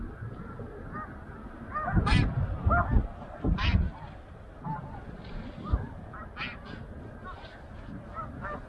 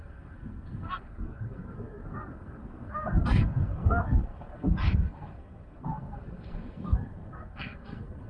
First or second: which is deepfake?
second